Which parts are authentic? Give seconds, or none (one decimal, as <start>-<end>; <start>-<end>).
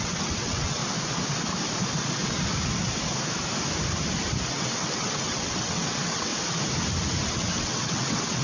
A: 0.8-4.5; 6.3-7.3